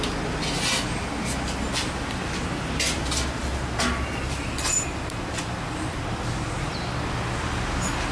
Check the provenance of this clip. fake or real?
real